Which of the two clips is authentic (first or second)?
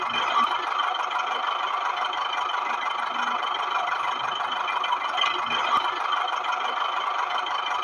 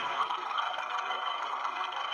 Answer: first